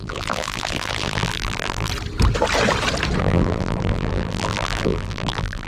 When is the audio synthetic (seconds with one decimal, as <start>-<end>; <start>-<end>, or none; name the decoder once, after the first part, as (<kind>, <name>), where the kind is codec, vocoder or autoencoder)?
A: 0.0-1.9 (vocoder, BigVGAN v2); 3.2-5.7